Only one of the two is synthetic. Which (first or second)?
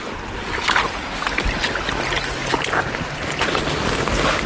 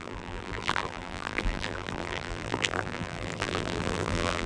second